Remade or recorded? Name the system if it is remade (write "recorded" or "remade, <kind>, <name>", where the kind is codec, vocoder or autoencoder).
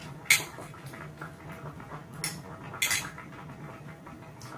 recorded